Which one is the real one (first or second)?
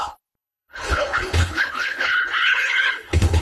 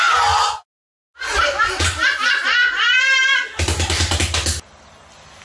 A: second